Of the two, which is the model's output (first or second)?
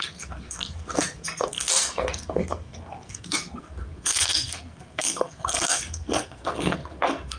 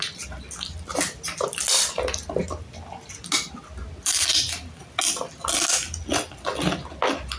first